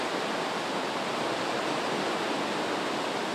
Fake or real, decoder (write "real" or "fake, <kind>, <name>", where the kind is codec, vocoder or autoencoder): real